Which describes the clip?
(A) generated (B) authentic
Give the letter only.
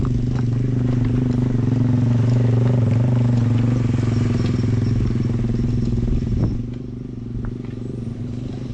B